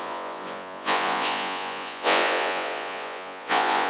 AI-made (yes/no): yes